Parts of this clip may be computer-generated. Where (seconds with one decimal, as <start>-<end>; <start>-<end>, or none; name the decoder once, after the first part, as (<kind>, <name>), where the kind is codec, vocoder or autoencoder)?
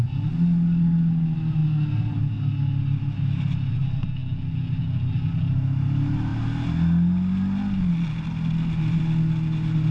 none